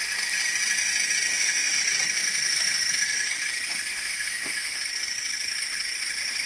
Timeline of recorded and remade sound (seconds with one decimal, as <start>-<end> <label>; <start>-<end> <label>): 0.0-1.3 recorded; 1.3-1.8 remade; 1.8-3.9 recorded; 3.9-4.8 remade; 4.8-6.5 recorded